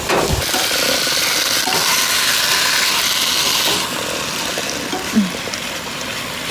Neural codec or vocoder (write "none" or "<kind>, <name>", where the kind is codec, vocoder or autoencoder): none